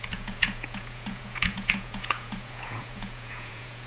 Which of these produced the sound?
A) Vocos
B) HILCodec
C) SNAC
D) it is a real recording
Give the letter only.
A